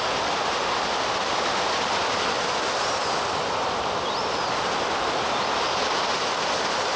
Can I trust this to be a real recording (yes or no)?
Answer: yes